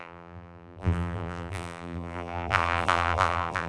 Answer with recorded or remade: remade